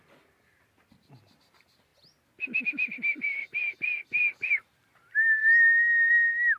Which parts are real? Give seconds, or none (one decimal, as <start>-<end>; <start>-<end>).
0.0-3.1; 3.8-6.6